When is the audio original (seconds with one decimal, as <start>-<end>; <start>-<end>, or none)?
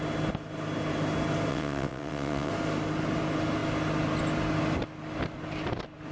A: 0.0-1.5; 2.5-6.1